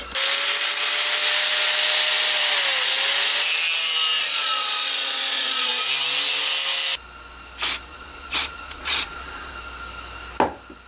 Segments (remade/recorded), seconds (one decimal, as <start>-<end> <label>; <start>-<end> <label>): 0.0-4.2 recorded; 4.2-5.7 remade; 5.7-7.9 recorded; 7.9-9.5 remade; 9.5-10.9 recorded

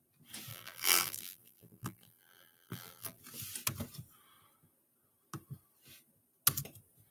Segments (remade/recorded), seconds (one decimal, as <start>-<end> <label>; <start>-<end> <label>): 0.0-0.5 recorded; 0.5-3.2 remade; 3.2-7.1 recorded

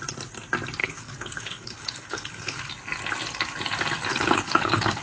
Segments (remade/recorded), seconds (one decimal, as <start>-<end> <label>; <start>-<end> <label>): 0.0-0.8 recorded; 0.8-2.7 remade; 2.7-4.1 recorded; 4.1-5.0 remade

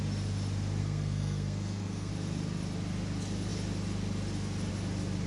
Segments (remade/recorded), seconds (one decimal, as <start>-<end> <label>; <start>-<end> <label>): 0.0-0.8 recorded; 0.8-2.1 remade; 2.1-5.3 recorded

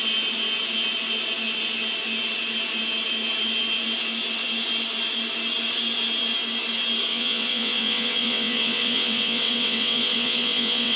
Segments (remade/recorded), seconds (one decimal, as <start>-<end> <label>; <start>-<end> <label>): 0.0-7.1 recorded; 7.1-11.0 remade

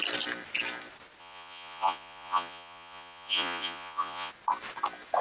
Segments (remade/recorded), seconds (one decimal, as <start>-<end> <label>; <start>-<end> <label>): 0.0-1.2 recorded; 1.2-4.3 remade; 4.3-5.2 recorded

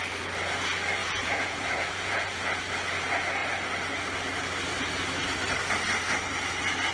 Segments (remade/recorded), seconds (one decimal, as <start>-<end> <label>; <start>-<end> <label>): 0.0-1.0 recorded; 1.0-2.5 remade; 2.5-6.9 recorded